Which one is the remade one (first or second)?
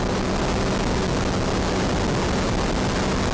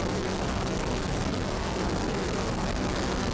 second